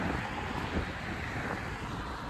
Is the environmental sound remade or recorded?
recorded